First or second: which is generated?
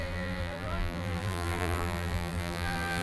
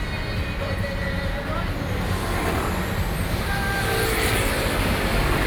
first